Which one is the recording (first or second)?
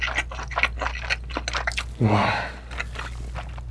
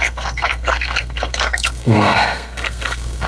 first